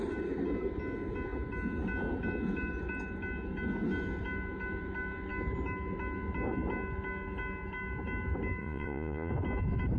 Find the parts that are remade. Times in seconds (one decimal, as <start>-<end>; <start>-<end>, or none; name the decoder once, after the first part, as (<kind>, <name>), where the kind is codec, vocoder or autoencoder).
8.6-9.3 (vocoder, Vocos)